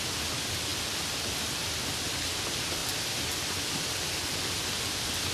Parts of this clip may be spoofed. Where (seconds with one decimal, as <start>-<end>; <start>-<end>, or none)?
none